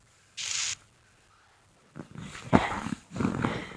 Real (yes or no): yes